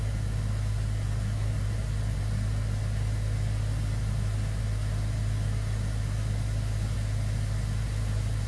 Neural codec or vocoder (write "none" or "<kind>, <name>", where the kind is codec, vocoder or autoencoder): none